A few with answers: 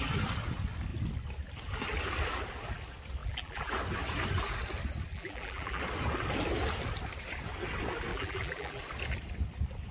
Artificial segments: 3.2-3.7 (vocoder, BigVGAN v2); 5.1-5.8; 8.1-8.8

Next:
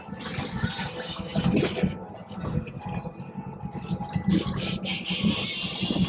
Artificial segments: none

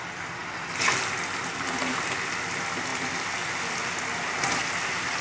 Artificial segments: none

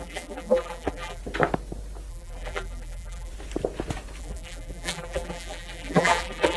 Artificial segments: 0.0-1.2 (vocoder, BigVGAN v2); 2.1-3.3; 4.2-6.6